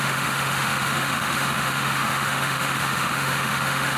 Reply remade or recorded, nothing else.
remade